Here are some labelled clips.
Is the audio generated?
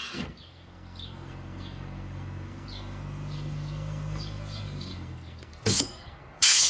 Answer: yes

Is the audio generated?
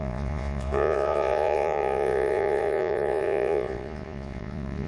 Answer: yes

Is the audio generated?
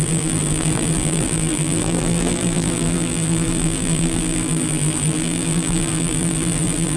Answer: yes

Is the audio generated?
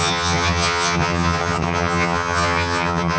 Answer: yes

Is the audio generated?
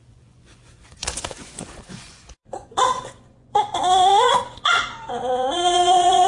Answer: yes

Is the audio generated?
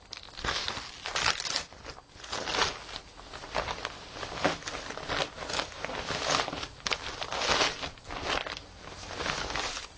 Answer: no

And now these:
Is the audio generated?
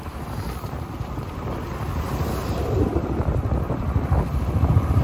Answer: yes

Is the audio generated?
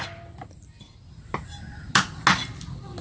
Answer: no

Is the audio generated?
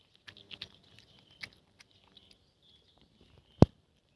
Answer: no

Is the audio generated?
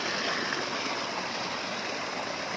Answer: no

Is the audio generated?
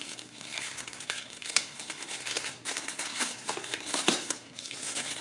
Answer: yes